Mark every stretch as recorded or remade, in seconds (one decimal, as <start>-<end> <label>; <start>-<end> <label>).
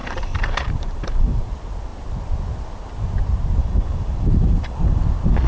0.0-1.5 remade; 1.5-3.6 recorded; 3.6-5.0 remade; 5.0-5.5 recorded